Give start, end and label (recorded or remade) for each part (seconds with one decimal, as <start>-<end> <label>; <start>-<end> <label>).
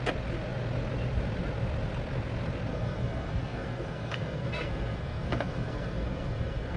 0.0-2.7 recorded; 2.7-6.8 remade